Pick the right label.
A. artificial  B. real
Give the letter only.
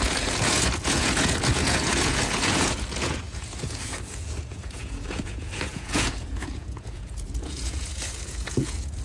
A